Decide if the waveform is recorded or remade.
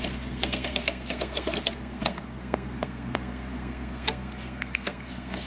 remade